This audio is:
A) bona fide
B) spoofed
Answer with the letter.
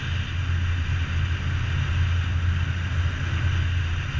A